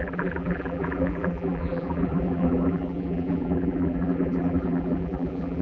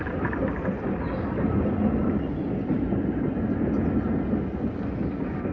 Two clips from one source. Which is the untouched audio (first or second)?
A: second